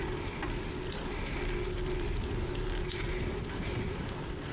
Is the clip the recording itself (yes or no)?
yes